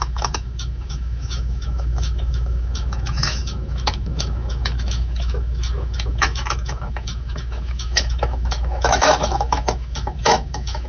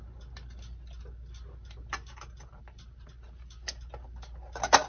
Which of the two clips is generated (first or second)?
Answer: first